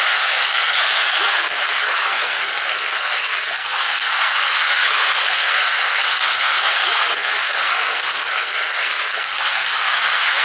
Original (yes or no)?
no